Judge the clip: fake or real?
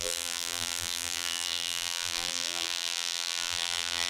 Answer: fake